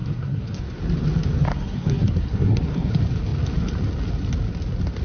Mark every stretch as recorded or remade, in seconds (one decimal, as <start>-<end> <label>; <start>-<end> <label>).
0.0-0.6 remade; 0.6-1.5 recorded; 1.5-2.9 remade; 2.9-5.0 recorded